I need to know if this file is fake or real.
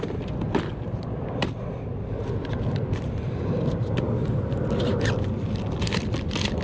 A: fake